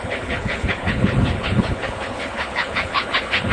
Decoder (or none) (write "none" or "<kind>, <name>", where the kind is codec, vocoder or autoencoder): codec, HILCodec